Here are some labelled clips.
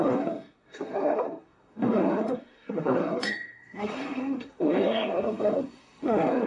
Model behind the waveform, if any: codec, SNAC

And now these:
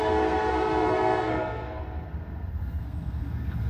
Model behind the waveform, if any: codec, SNAC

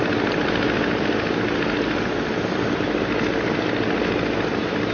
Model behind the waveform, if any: none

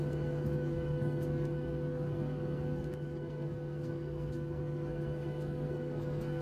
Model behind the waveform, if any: codec, SNAC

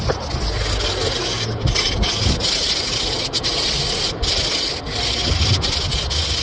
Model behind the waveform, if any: none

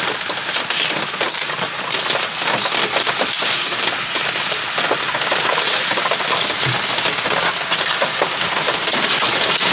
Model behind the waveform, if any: none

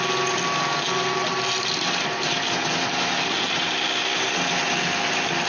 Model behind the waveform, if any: none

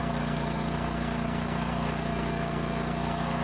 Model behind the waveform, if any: codec, SNAC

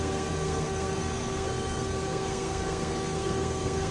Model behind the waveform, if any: codec, SNAC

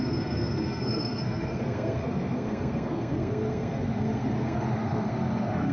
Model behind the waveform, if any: codec, SNAC